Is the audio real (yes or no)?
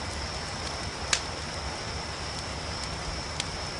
yes